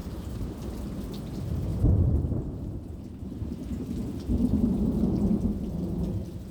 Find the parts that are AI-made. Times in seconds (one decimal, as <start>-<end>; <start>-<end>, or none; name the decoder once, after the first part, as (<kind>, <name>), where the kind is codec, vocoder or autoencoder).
0.0-0.6 (vocoder, BigVGAN v2); 1.7-3.9